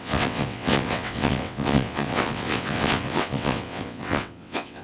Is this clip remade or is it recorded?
remade